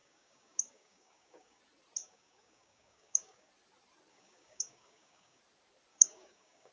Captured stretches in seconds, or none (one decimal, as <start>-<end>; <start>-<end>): 1.6-2.0; 3.5-4.1; 5.4-5.9